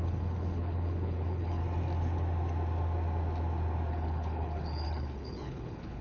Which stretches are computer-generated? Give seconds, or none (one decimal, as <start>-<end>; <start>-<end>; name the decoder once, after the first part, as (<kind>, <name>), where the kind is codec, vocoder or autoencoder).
0.0-1.6 (codec, HILCodec); 3.9-6.0